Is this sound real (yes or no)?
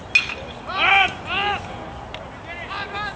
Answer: yes